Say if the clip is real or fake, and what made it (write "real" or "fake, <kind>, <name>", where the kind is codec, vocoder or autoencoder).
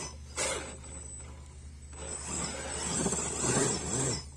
real